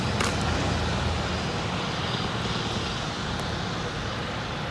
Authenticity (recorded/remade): recorded